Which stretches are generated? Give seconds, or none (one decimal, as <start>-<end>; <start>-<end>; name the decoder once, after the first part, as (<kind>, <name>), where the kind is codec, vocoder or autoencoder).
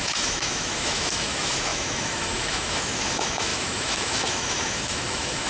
0.0-5.5 (autoencoder, DAC-VAE)